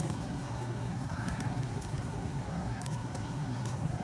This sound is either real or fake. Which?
fake